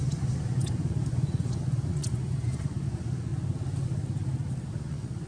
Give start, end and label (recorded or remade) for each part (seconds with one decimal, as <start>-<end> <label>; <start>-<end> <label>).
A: 0.0-3.3 remade; 3.3-4.8 recorded; 4.8-5.3 remade